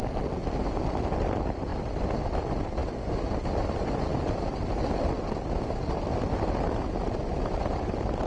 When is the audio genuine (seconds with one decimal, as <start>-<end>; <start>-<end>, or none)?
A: 0.0-7.3